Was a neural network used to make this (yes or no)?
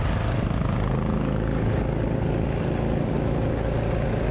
no